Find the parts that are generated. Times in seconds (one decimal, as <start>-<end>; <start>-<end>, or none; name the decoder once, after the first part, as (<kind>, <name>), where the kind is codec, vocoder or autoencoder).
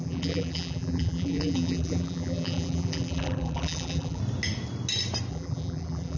0.0-4.2 (vocoder, BigVGAN v2); 5.3-6.2